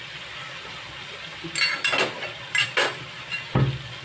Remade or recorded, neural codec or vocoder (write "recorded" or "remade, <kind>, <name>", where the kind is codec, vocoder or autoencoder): recorded